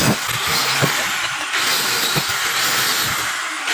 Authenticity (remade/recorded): recorded